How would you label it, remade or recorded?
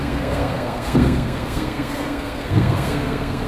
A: remade